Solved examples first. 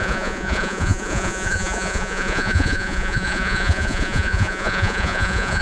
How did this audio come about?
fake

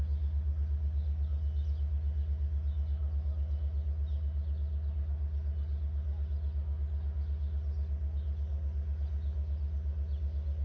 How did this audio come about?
real